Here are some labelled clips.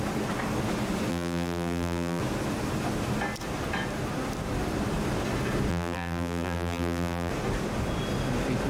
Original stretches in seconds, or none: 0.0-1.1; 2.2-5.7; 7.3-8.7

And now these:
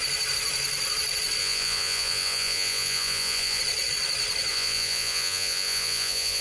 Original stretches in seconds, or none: 0.0-1.4; 3.6-4.5

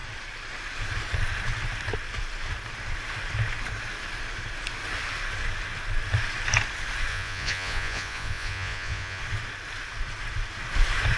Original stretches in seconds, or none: 0.0-7.1; 9.2-11.2

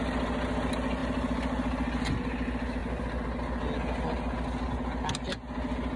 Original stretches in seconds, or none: 0.0-6.0

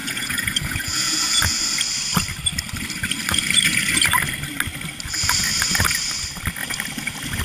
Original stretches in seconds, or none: 1.6-7.4

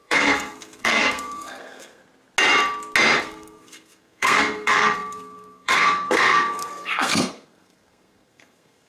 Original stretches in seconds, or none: 2.0-3.2

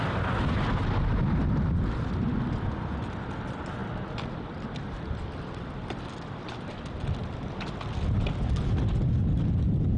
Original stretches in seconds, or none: 0.0-10.0

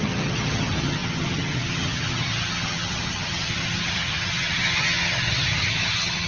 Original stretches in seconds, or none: none